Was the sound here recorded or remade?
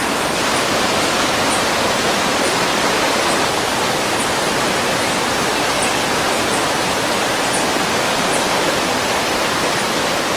recorded